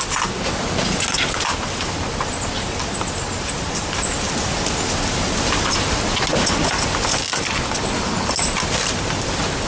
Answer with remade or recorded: recorded